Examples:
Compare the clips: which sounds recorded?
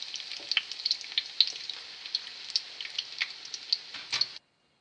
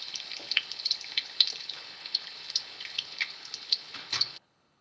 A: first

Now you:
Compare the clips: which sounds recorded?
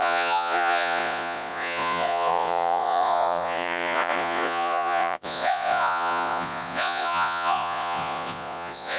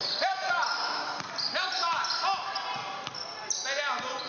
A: second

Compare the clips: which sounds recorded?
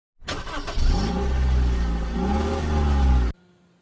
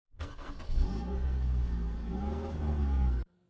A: first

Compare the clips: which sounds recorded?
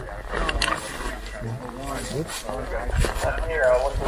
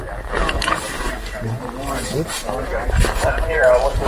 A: first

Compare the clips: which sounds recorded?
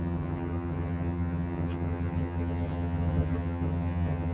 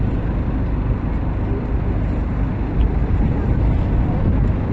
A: second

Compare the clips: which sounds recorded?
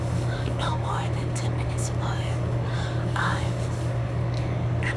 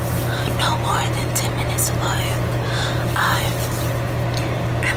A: second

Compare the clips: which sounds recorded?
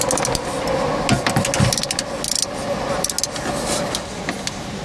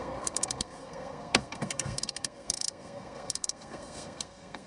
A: first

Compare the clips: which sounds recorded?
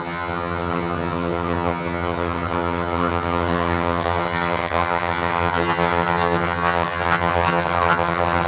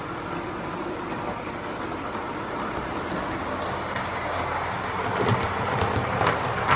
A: second